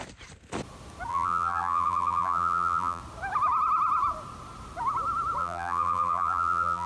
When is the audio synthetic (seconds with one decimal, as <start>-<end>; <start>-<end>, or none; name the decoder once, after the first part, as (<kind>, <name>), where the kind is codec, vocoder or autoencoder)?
1.1-3.0 (vocoder, BigVGAN v2); 5.4-6.9

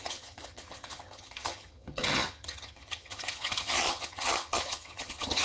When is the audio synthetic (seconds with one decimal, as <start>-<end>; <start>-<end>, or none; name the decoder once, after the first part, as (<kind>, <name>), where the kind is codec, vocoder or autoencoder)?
0.0-5.4 (vocoder, HiFi-GAN)

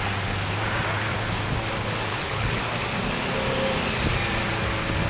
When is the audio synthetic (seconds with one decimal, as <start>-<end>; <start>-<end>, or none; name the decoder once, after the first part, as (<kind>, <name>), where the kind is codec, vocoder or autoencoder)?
2.1-2.6 (codec, HILCodec)

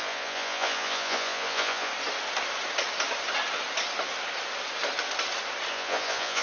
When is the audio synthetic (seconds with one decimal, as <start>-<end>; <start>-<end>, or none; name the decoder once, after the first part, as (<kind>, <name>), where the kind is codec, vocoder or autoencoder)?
0.0-1.9 (vocoder, Vocos); 5.7-6.4

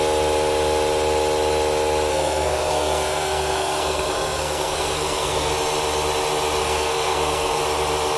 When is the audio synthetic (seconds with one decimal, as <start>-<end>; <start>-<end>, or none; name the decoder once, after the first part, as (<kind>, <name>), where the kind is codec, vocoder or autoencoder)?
2.1-5.5 (codec, SNAC); 6.6-7.6